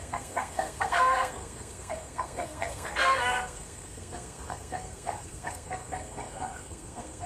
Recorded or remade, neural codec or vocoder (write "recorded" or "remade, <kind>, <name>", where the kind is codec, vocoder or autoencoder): remade, codec, SNAC